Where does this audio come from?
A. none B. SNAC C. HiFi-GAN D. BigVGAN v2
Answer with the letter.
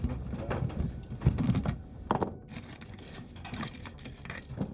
D